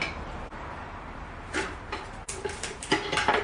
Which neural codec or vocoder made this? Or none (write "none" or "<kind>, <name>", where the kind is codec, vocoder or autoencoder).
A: vocoder, BigVGAN v2